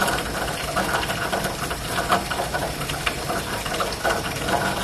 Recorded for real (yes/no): yes